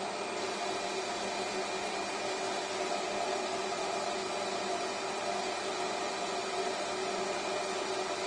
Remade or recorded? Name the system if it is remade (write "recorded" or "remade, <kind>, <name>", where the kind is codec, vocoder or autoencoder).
recorded